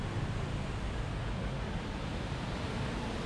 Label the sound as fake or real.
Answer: real